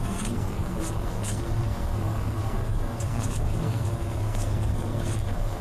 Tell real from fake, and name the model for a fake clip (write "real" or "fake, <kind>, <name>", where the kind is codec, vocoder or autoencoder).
fake, codec, SNAC